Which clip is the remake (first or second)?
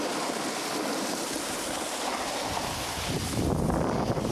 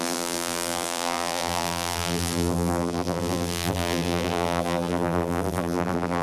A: second